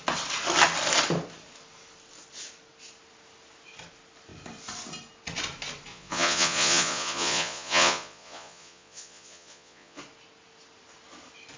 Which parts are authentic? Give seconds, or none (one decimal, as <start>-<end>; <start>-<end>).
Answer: 0.0-5.9; 10.0-11.6

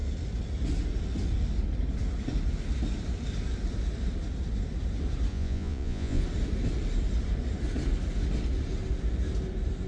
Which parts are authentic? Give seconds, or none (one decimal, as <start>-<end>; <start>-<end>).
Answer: 0.0-5.3; 6.2-9.9

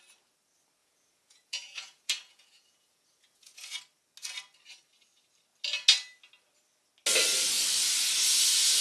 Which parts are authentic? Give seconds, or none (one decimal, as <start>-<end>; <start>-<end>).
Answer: 0.0-0.8; 3.8-8.8

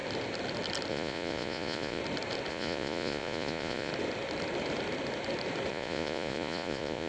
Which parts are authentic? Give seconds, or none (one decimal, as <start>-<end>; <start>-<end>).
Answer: 0.0-0.9; 2.0-2.5; 3.9-5.7

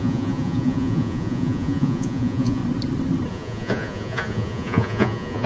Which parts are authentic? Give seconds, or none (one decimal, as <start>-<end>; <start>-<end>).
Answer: 2.6-3.3